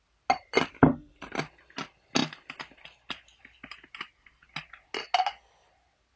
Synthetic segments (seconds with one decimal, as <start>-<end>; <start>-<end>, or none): 0.4-1.6; 2.2-3.1